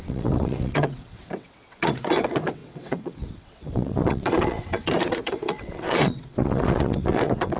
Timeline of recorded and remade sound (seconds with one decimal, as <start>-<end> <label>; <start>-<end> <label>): 0.0-7.6 remade